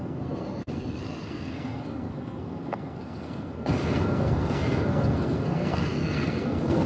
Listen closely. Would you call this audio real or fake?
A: fake